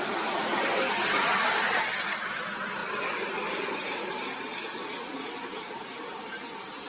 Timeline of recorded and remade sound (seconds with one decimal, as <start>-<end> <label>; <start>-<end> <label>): 0.0-2.8 recorded; 2.8-4.3 remade; 4.3-5.5 recorded; 5.5-6.9 remade